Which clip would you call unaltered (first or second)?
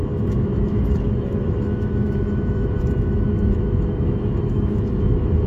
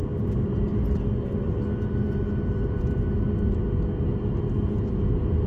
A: second